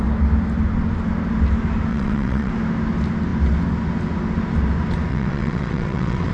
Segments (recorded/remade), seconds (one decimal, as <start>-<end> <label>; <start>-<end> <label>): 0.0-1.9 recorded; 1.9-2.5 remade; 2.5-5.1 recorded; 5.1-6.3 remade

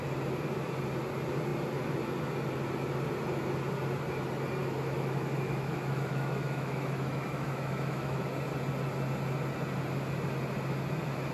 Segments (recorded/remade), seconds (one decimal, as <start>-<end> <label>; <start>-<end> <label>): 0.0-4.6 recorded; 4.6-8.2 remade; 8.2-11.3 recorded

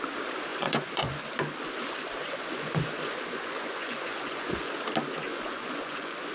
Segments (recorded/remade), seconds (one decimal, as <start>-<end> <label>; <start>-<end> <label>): 0.0-0.5 recorded; 0.5-1.2 remade; 1.2-2.2 recorded; 2.2-4.7 remade; 4.7-5.3 recorded; 5.3-6.3 remade

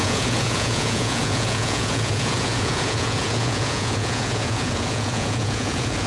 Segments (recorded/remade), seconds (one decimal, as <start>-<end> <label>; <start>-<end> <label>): 0.0-6.1 remade

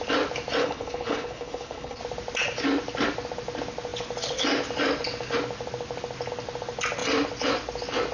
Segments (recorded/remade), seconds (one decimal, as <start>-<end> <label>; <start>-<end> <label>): 0.0-0.6 recorded; 0.6-2.0 remade; 2.0-8.1 recorded